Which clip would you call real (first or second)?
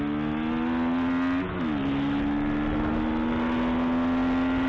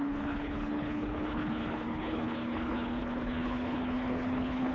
first